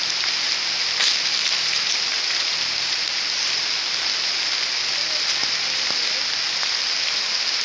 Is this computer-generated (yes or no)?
no